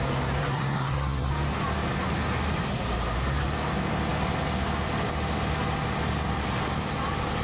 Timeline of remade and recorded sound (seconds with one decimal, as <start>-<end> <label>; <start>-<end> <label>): 0.0-0.4 recorded; 0.4-1.3 remade; 1.3-7.4 recorded